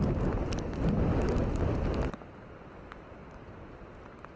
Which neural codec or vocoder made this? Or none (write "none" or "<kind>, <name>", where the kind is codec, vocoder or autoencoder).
none